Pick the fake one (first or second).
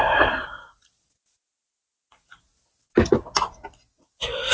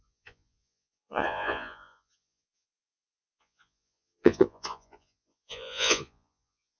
second